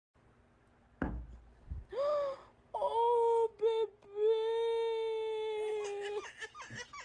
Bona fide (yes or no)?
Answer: yes